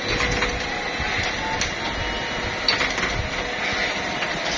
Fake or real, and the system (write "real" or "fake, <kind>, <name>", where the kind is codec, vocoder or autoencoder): real